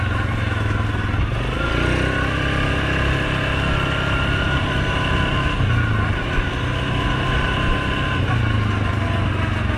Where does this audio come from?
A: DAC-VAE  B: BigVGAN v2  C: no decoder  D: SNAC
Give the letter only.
C